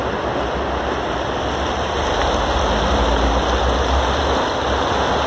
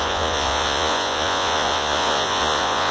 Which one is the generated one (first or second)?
second